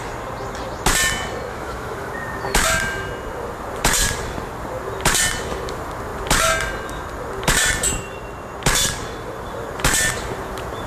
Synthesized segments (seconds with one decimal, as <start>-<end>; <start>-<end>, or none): 1.5-2.1